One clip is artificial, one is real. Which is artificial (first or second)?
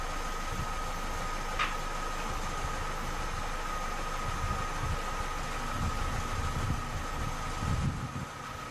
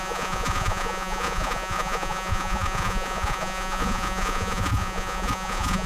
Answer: second